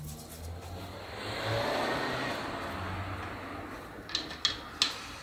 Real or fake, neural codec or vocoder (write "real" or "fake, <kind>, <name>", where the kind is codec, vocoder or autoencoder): real